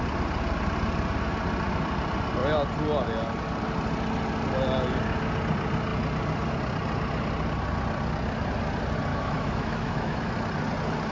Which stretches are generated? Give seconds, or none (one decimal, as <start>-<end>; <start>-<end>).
9.1-10.3